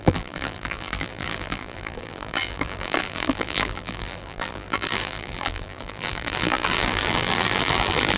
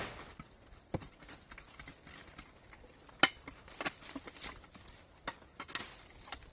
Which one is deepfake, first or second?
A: first